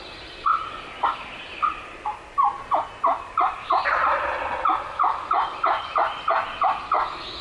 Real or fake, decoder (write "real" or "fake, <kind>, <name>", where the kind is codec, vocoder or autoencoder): real